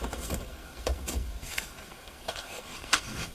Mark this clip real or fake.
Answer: fake